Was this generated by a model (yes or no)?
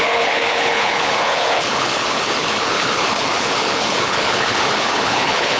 yes